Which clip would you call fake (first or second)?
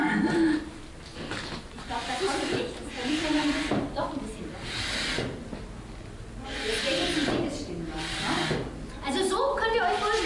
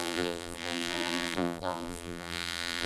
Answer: second